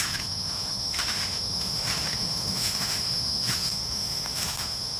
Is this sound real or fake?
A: fake